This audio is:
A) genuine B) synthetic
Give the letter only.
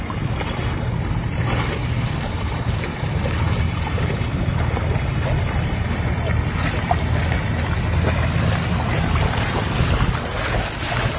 A